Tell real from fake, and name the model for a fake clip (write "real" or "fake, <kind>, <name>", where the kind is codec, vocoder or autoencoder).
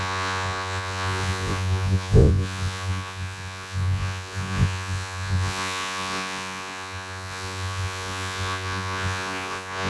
fake, vocoder, Vocos